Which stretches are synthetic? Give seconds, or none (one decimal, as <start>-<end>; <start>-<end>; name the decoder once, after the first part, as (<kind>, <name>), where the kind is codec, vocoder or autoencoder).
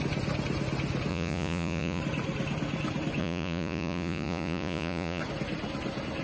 1.1-2.0 (vocoder, Vocos); 3.2-5.2